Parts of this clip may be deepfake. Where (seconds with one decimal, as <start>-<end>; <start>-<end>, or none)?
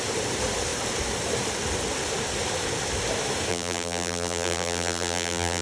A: 3.5-5.6